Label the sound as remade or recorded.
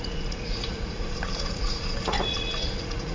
remade